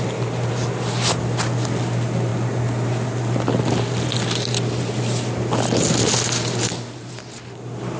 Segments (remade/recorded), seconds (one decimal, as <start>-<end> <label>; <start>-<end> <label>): 0.0-8.0 recorded